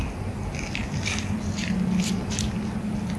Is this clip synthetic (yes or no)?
no